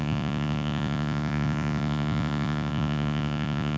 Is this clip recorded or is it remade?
remade